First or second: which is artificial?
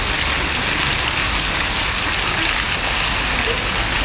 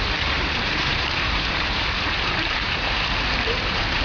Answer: second